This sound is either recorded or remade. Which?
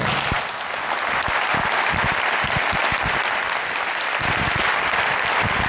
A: recorded